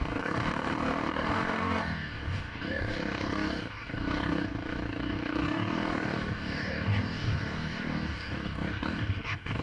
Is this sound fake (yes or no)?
yes